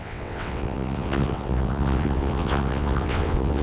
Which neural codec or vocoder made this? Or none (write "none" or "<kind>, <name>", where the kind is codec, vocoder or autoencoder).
vocoder, WaveNeXt